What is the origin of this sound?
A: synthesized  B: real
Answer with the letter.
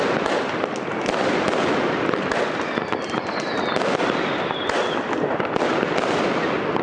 B